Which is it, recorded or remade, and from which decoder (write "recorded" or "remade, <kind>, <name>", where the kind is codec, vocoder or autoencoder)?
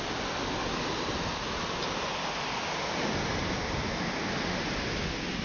recorded